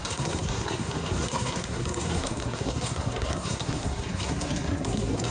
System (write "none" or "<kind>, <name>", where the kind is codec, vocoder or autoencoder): codec, SNAC